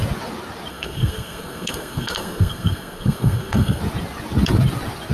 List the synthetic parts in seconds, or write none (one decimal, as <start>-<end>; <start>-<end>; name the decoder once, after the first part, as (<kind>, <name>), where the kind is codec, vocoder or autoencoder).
0.7-3.8 (codec, SNAC)